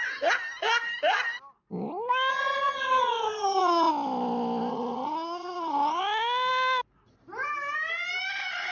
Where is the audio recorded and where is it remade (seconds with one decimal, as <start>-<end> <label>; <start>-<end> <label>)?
0.0-2.3 recorded; 2.3-3.9 remade; 3.9-4.7 recorded; 4.7-6.0 remade; 6.0-8.7 recorded